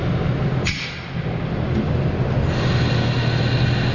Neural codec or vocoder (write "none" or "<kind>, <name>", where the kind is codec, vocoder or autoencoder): none